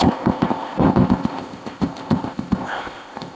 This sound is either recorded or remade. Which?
remade